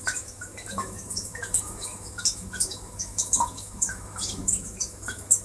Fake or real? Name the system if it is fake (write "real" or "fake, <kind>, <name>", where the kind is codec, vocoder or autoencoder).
fake, autoencoder, DAC-VAE